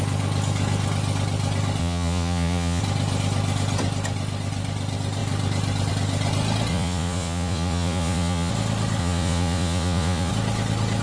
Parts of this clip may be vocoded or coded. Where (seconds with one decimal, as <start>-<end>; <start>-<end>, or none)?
1.8-2.8; 6.7-8.5; 9.0-10.3